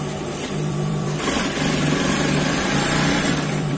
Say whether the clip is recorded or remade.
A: remade